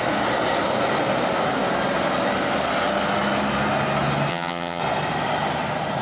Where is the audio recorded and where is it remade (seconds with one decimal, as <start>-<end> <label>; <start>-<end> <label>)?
0.0-4.3 recorded; 4.3-4.8 remade; 4.8-6.0 recorded